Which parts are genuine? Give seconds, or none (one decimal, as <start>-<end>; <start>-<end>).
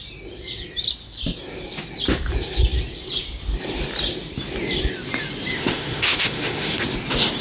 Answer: 0.0-5.5; 6.8-7.4